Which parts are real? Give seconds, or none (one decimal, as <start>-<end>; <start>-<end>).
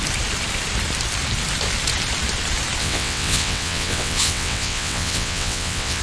0.0-2.8